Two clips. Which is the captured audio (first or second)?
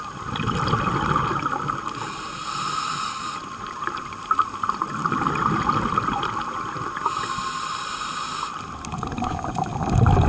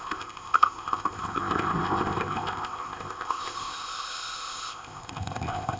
first